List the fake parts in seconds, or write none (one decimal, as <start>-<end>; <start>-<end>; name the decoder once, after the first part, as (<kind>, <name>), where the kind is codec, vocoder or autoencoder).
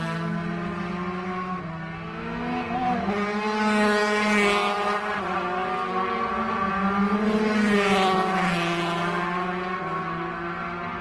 none